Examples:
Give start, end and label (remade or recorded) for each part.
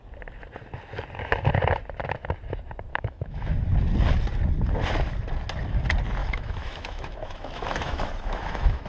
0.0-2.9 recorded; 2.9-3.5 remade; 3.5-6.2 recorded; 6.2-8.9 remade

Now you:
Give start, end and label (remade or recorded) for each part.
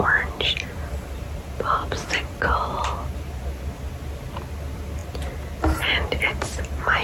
0.0-7.0 recorded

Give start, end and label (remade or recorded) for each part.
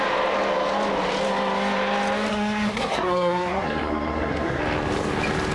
0.0-2.3 recorded; 2.3-4.6 remade; 4.6-5.5 recorded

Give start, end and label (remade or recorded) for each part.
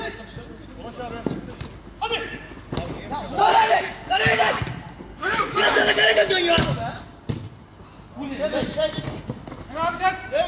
0.0-3.5 recorded; 3.5-4.6 remade; 4.6-5.1 recorded; 5.1-6.1 remade; 6.1-10.5 recorded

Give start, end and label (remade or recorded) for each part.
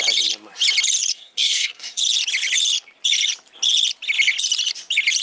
0.0-1.1 recorded; 1.1-2.0 remade; 2.0-5.2 recorded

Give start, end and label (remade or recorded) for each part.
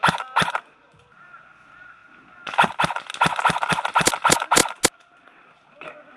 0.0-6.2 recorded